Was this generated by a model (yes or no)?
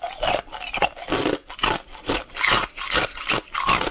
no